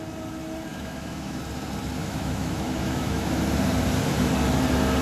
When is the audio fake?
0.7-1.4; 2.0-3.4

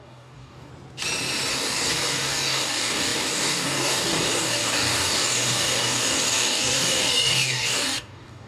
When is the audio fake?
0.0-0.7; 1.5-8.5

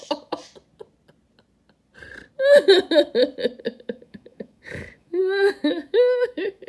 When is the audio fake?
0.0-0.4; 3.6-6.7

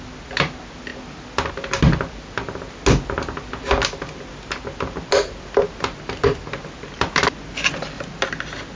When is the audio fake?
none

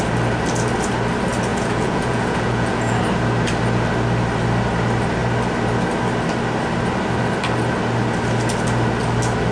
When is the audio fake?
1.5-3.0

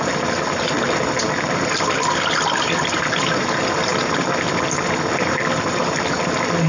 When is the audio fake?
none